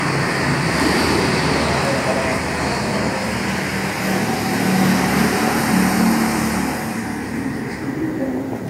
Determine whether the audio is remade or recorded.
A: recorded